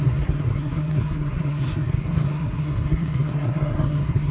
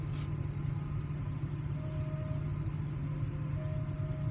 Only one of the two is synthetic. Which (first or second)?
first